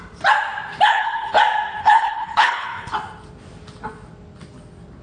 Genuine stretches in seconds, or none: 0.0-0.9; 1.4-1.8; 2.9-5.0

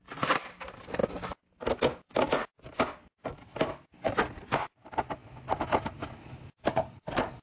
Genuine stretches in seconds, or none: 0.0-6.7